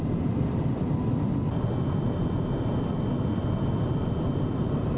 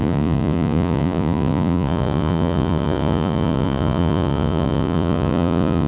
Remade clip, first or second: second